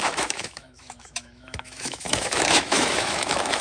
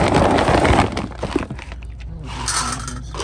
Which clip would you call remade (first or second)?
first